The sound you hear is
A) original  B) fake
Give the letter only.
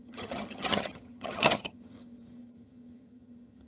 B